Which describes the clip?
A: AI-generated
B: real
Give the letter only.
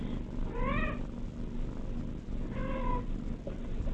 B